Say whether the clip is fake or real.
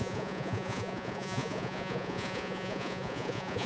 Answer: fake